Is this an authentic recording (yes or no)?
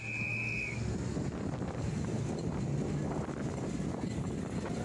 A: yes